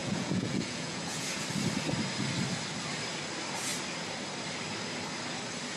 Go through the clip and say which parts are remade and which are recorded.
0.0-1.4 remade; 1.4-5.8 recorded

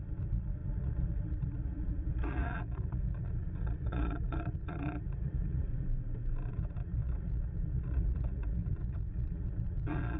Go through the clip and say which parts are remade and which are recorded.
0.0-5.7 remade; 5.7-6.5 recorded; 6.5-10.2 remade

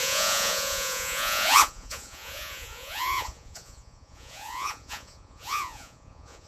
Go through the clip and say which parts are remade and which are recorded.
0.0-6.5 remade

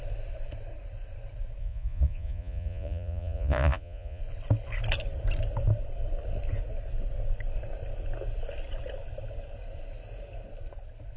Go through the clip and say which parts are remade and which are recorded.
0.0-1.6 recorded; 1.6-4.2 remade; 4.2-11.2 recorded

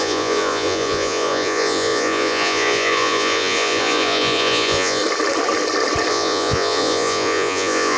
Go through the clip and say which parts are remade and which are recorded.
0.0-5.0 remade; 5.0-6.1 recorded; 6.1-8.0 remade